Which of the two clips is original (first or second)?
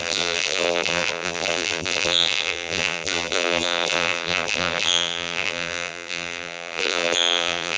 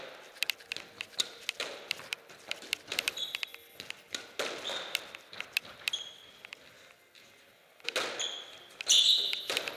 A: second